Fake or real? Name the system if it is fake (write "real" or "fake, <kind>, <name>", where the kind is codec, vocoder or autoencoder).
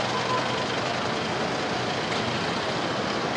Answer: real